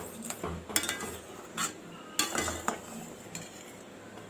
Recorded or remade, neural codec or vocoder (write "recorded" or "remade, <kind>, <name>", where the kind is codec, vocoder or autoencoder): recorded